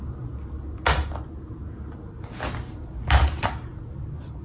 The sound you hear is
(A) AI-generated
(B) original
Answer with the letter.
B